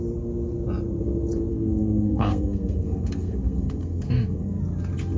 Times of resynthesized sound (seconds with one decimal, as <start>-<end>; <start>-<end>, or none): 1.5-4.6